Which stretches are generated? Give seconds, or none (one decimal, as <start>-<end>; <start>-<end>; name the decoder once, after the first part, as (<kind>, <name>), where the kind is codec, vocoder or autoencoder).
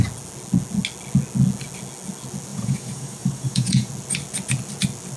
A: 2.5-3.9 (vocoder, Vocos)